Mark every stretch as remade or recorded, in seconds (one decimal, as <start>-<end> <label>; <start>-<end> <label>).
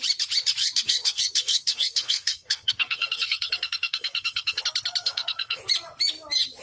0.0-0.6 recorded; 0.6-4.6 remade; 4.6-5.0 recorded; 5.0-5.6 remade; 5.6-6.6 recorded